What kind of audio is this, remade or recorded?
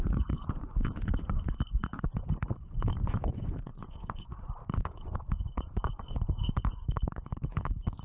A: remade